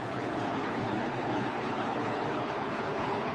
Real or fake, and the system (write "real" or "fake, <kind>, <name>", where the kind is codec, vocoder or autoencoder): fake, codec, HILCodec